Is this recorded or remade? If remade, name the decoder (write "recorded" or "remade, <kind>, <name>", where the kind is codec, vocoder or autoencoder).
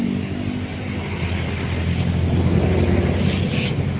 recorded